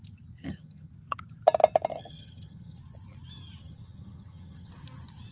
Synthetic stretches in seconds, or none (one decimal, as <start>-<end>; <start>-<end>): 0.4-0.9; 1.9-2.8; 3.6-4.7